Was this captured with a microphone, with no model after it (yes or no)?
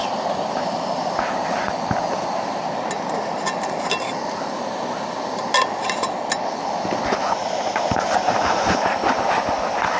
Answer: yes